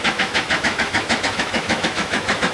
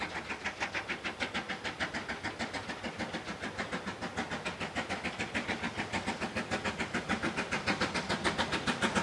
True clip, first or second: second